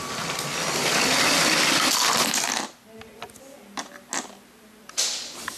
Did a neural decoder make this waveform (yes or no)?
no